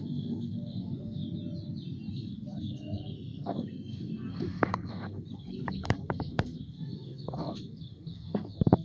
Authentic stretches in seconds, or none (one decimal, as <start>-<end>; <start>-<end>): 1.2-2.1